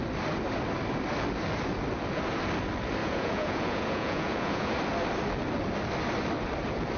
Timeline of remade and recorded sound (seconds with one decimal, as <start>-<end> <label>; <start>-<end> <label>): 0.0-3.0 recorded; 3.0-4.7 remade; 4.7-7.0 recorded